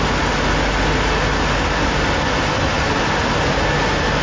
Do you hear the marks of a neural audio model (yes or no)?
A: no